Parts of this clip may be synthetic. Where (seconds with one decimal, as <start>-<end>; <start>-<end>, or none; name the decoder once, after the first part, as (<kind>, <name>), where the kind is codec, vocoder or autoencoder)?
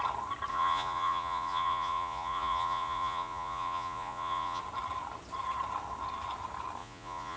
0.5-4.6 (vocoder, Vocos); 6.8-7.4